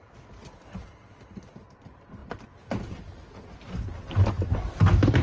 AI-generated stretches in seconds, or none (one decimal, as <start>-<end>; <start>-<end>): none